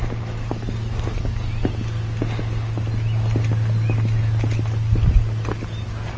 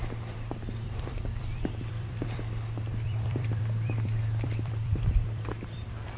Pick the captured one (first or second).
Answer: first